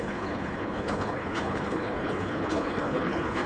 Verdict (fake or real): fake